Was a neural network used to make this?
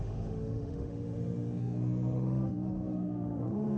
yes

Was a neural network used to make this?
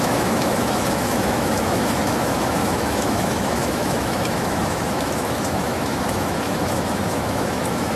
yes